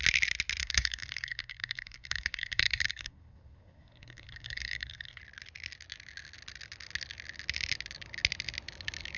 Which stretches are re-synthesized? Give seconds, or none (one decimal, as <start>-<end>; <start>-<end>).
0.6-5.2